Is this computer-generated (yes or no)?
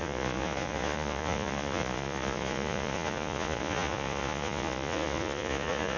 yes